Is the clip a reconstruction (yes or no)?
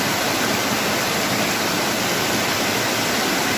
no